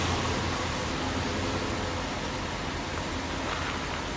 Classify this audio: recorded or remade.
recorded